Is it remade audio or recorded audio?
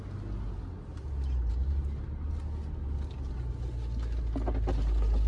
recorded